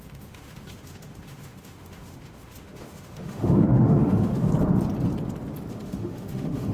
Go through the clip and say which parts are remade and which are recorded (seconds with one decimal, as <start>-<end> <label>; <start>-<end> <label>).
0.0-4.5 remade; 4.5-5.7 recorded; 5.7-6.7 remade